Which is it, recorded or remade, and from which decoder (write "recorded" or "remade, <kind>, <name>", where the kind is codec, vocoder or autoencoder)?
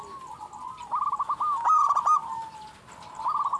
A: recorded